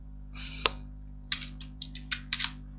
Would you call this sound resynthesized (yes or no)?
yes